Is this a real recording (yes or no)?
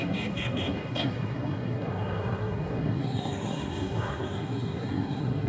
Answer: no